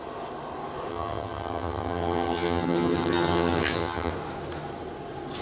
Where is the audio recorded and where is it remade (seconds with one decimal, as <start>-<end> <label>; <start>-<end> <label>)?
0.0-0.9 recorded; 0.9-4.1 remade; 4.1-5.4 recorded